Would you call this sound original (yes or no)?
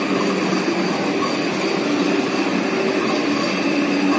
yes